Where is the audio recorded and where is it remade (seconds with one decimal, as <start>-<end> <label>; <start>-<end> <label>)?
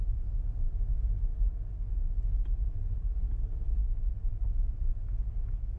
0.0-5.8 recorded